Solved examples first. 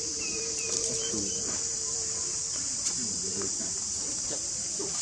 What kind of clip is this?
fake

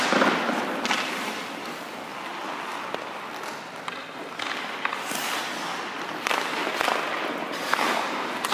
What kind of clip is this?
real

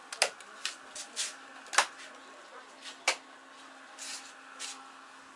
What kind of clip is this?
real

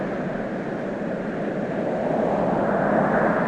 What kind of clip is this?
real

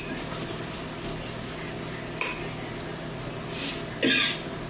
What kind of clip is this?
real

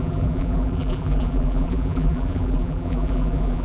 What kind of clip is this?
fake